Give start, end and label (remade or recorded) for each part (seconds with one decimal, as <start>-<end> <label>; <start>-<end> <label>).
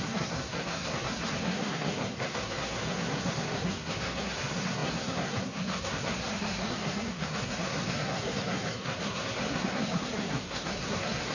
0.0-11.3 remade